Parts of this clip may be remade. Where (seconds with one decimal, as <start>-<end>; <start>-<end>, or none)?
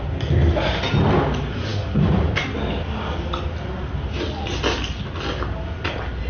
none